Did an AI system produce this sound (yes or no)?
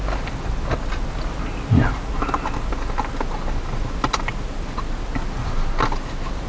no